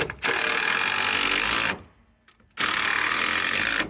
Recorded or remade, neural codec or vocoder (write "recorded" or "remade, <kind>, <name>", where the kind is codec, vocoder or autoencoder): recorded